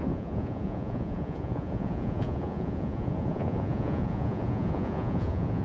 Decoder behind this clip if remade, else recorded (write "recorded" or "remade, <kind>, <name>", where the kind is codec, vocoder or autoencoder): remade, vocoder, Vocos